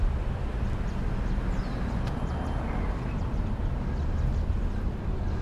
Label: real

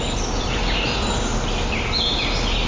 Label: real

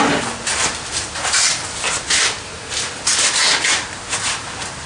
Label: real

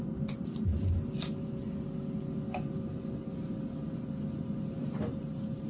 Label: real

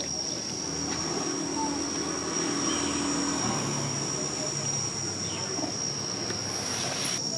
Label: real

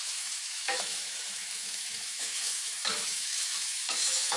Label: fake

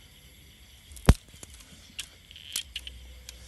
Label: real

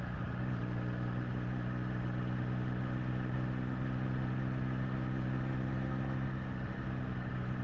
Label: real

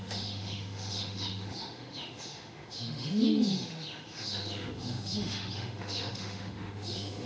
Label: fake